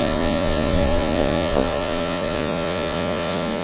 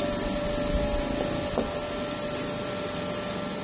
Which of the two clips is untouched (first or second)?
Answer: second